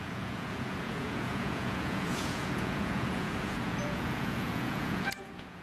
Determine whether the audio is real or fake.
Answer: fake